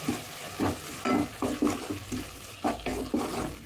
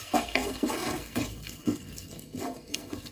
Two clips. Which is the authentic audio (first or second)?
first